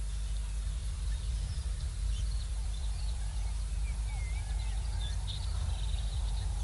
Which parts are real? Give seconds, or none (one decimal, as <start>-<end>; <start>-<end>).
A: 0.0-0.8; 4.0-6.6